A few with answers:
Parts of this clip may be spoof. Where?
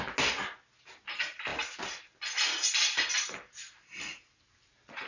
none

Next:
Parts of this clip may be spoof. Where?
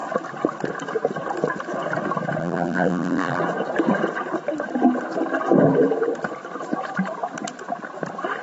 2.4-3.4 (vocoder, BigVGAN v2)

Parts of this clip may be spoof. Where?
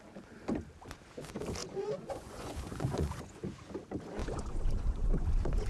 1.6-3.4 (vocoder, Vocos); 4.2-5.7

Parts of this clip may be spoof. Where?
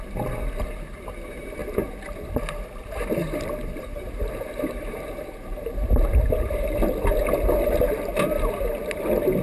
3.2-6.8 (vocoder, BigVGAN v2)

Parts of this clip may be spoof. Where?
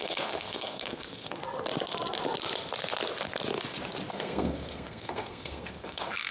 0.0-1.4 (codec, SNAC); 4.1-6.3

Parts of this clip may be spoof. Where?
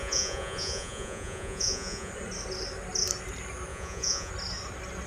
0.0-2.1 (vocoder, Vocos); 3.7-4.3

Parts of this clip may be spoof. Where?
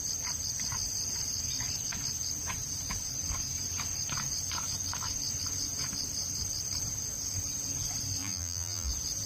8.2-8.9 (vocoder, BigVGAN v2)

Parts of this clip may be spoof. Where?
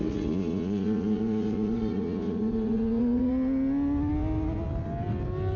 0.0-3.3 (vocoder, Vocos)